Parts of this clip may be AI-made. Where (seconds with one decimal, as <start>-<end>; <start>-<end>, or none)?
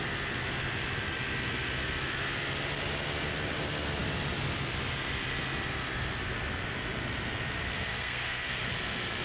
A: 7.9-8.6